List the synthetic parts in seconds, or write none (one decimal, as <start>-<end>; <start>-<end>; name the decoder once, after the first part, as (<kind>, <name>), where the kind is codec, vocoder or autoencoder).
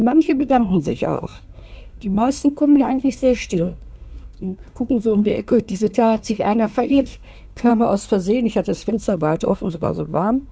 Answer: 0.0-7.7 (codec, SNAC); 8.9-10.5